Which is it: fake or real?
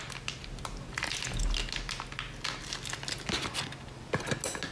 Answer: real